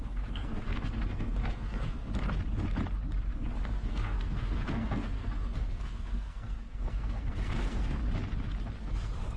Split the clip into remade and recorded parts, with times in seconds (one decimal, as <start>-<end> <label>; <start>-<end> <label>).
0.0-2.1 remade; 2.1-3.7 recorded; 3.7-8.0 remade; 8.0-8.8 recorded; 8.8-9.4 remade